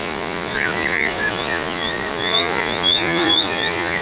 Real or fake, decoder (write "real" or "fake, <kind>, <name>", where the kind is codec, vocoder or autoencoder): fake, vocoder, Vocos